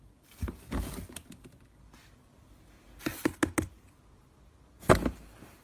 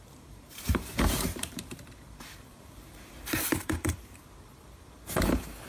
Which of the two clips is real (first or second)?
first